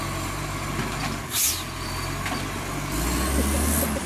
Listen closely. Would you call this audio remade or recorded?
recorded